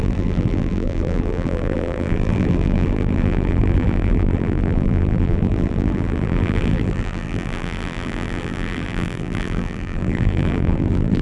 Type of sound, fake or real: fake